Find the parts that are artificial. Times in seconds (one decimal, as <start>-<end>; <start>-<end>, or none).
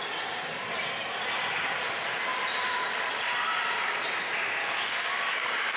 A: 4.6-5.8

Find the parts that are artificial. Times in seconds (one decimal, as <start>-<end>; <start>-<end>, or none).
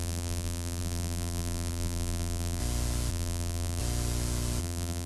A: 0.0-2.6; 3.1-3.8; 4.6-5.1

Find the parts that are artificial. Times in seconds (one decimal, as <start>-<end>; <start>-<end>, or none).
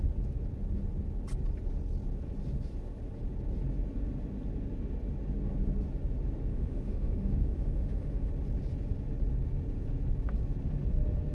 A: 6.5-8.3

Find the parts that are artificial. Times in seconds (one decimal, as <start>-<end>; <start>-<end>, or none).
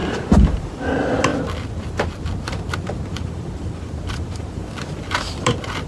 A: 0.0-1.3; 3.1-5.9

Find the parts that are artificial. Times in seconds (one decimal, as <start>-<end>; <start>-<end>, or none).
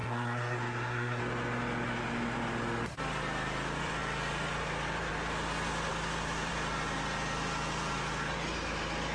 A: 0.0-1.2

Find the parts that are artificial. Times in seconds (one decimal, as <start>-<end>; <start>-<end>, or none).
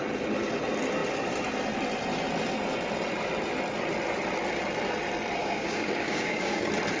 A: 5.4-6.6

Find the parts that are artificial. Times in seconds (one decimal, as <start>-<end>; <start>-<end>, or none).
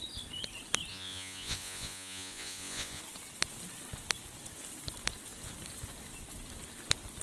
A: 0.9-3.0